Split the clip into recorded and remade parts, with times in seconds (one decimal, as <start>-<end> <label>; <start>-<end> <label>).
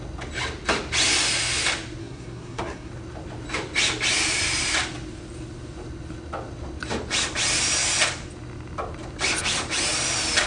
0.0-2.0 recorded; 2.0-2.9 remade; 2.9-10.5 recorded